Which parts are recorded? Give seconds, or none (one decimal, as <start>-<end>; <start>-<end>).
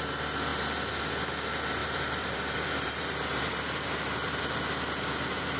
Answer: 0.0-1.8